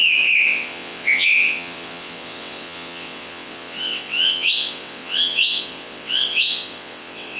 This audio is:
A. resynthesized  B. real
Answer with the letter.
A